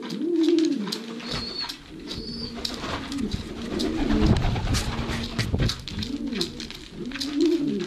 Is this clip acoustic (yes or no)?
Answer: yes